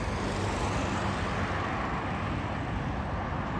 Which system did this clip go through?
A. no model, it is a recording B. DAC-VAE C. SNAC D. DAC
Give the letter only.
A